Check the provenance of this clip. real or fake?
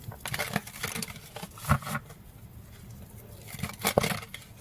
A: real